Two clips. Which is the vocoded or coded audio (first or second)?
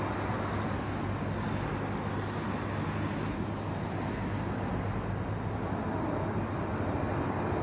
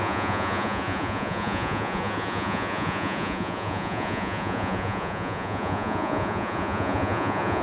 second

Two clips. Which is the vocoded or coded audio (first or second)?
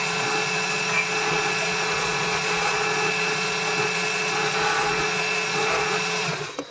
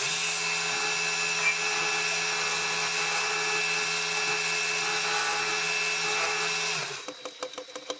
first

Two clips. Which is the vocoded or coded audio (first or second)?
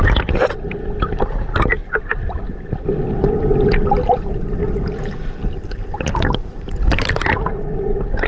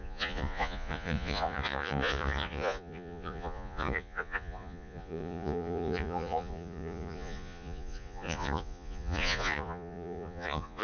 second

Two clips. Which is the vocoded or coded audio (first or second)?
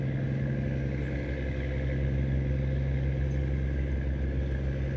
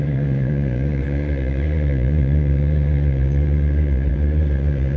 second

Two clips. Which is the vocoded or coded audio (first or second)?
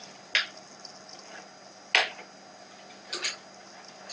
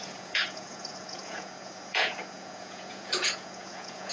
second